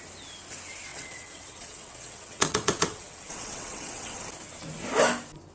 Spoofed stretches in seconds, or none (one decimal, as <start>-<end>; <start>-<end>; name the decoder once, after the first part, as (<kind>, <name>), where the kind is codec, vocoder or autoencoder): 0.9-4.2 (vocoder, WaveNeXt)